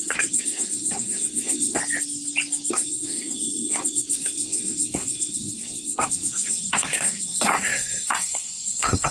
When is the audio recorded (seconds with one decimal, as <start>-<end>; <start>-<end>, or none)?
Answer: 1.8-2.7